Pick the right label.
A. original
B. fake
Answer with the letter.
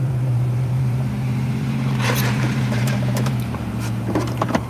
B